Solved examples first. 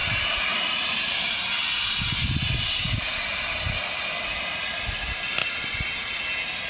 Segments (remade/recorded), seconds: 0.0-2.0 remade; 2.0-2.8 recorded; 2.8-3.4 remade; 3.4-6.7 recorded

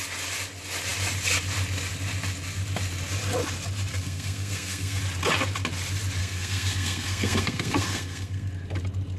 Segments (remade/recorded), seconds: 0.0-3.9 recorded; 3.9-5.0 remade; 5.0-6.2 recorded; 6.2-8.5 remade; 8.5-9.2 recorded